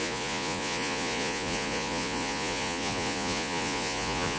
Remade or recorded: remade